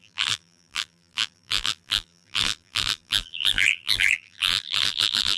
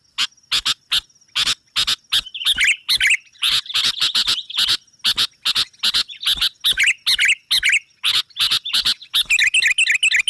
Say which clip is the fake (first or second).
first